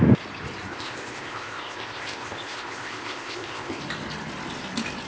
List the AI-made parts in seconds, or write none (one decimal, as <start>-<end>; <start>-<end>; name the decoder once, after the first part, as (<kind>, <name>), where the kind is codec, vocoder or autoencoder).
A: 0.7-3.8 (codec, ZipCodec)